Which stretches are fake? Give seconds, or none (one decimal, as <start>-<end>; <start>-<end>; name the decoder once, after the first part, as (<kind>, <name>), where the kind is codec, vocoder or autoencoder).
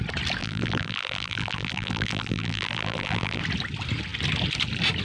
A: 0.4-3.4 (vocoder, BigVGAN v2)